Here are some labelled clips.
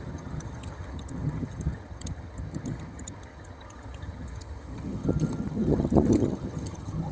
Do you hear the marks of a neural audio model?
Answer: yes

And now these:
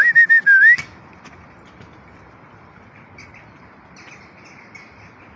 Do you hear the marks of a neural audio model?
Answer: no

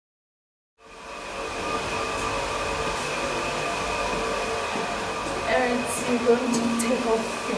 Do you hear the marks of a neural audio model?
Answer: no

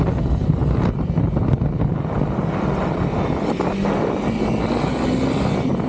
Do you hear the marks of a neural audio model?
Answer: no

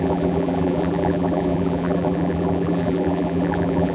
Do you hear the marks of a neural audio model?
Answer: yes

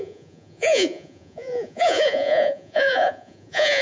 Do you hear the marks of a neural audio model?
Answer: yes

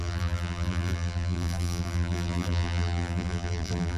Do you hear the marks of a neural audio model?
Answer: yes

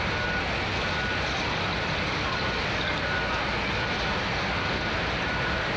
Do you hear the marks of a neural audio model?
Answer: no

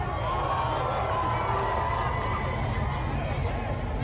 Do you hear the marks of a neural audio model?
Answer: no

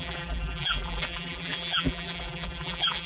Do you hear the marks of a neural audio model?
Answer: yes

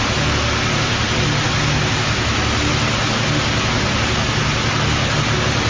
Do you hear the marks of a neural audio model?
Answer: no